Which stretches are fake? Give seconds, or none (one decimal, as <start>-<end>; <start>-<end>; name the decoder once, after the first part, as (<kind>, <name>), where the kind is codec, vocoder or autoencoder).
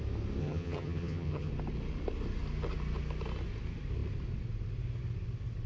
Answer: 0.4-1.5 (vocoder, HiFi-GAN)